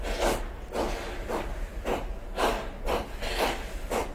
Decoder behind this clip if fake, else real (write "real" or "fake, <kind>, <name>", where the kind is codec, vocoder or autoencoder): real